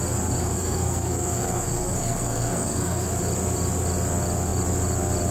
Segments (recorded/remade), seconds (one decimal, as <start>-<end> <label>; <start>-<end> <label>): 0.0-0.4 recorded; 0.4-3.1 remade; 3.1-5.3 recorded